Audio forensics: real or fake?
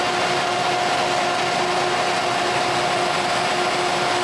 real